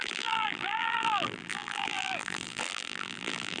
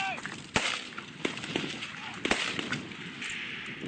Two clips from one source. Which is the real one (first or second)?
second